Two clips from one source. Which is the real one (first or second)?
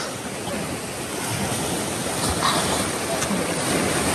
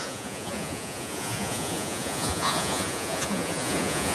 first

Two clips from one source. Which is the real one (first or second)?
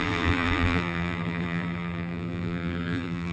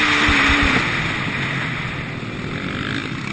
second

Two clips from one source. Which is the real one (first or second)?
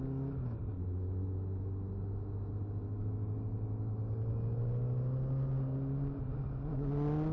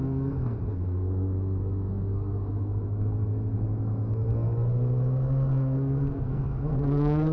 first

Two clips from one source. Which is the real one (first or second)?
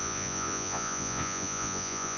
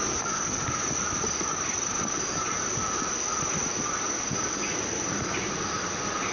second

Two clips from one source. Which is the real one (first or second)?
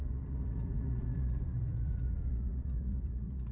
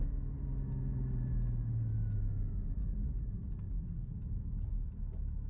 second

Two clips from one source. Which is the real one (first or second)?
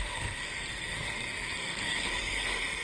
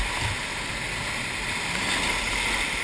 second